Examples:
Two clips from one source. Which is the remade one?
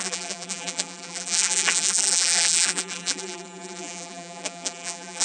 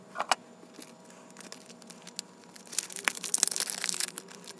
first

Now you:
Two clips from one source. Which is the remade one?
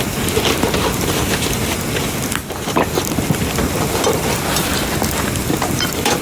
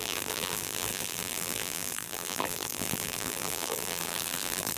second